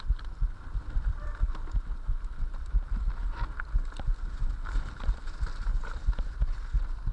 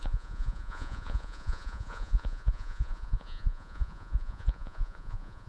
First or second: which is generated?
second